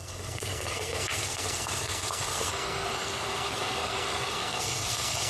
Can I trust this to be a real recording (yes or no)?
no